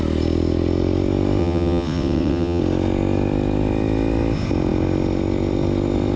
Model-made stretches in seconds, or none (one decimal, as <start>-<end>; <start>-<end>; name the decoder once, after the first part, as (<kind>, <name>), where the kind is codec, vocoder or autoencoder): 1.4-2.6 (vocoder, WaveNeXt)